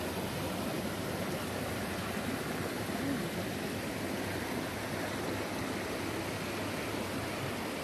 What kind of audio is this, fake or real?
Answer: real